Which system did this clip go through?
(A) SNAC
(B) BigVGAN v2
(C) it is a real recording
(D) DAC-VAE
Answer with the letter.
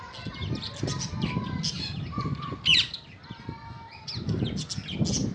C